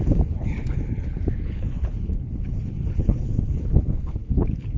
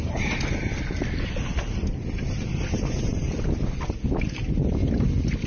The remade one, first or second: first